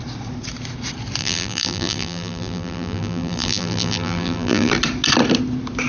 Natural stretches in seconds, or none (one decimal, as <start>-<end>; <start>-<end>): 0.0-1.2; 4.7-5.9

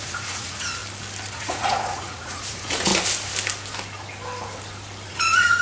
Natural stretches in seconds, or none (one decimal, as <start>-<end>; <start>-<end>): 0.8-1.3; 2.9-5.1